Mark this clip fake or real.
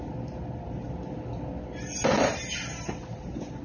real